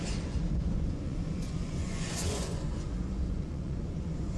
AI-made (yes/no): yes